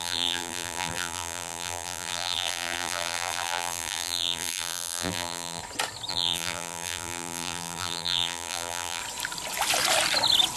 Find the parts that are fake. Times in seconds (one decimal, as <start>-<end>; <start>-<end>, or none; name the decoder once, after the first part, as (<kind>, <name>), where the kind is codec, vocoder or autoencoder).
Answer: 0.0-5.6 (vocoder, BigVGAN v2); 6.1-9.0